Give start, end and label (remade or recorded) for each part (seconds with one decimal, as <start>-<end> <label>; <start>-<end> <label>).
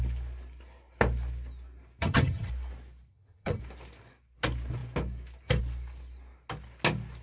0.0-2.0 recorded; 2.0-2.5 remade; 2.5-3.1 recorded; 3.1-3.6 remade; 3.6-7.2 recorded